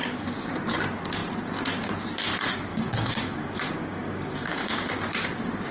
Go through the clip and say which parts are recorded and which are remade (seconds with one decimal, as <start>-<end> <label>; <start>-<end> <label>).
0.0-0.5 remade; 0.5-2.7 recorded; 2.7-4.9 remade; 4.9-5.7 recorded